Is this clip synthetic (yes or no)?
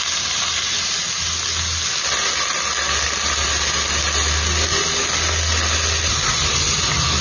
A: no